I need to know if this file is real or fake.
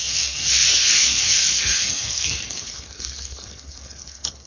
fake